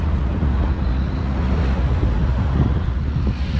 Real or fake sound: fake